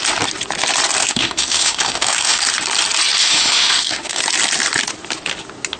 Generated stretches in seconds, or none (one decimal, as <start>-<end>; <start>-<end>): 1.0-2.4; 3.2-4.2